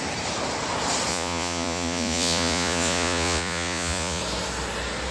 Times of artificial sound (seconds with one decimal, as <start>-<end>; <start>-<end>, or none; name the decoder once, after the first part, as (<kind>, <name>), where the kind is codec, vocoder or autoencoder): 1.1-4.2 (vocoder, Vocos)